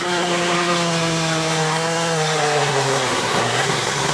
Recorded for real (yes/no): no